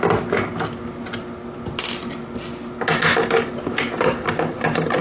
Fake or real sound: real